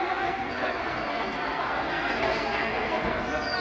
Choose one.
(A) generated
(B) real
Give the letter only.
A